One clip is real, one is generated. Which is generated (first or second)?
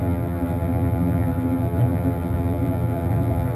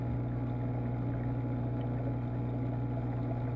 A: first